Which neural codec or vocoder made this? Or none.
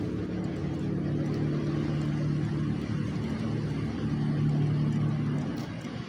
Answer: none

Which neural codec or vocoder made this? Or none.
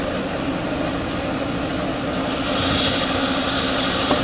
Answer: none